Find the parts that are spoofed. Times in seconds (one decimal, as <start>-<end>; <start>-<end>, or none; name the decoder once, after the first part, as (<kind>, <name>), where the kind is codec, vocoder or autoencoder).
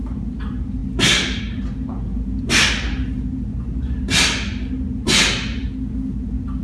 none